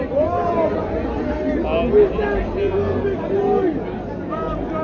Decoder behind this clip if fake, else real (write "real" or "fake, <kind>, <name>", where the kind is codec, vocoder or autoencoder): real